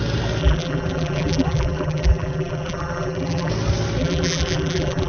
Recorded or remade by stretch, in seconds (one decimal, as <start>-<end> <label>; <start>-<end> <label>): 0.0-0.4 recorded; 0.4-3.5 remade; 3.5-4.0 recorded; 4.0-5.1 remade